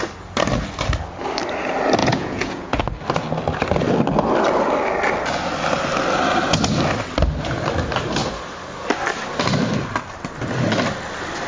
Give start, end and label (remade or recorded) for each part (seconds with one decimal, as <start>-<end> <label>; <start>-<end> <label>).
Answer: 0.0-2.0 recorded; 2.0-2.8 remade; 2.8-11.5 recorded